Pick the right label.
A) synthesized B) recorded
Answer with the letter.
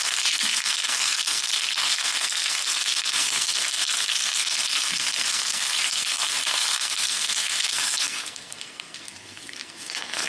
A